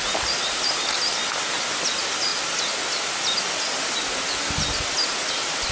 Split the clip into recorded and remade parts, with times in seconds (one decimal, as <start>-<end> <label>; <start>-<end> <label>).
0.0-5.7 recorded